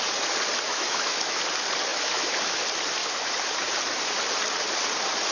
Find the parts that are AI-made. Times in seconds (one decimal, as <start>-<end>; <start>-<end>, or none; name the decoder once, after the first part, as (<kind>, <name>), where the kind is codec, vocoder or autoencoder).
0.7-1.4 (autoencoder, DAC-VAE); 1.9-2.6; 3.0-3.5